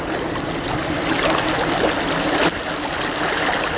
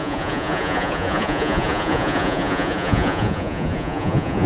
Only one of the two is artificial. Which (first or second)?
second